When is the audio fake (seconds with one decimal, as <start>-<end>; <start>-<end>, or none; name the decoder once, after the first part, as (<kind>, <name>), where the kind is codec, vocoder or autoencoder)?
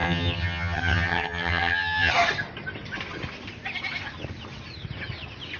0.0-2.1 (vocoder, HiFi-GAN)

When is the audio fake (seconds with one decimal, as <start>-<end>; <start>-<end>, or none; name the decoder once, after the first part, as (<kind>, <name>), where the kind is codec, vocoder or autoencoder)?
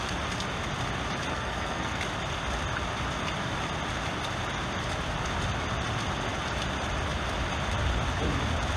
1.3-2.0 (codec, SNAC)